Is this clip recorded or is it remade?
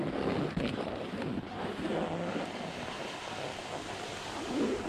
recorded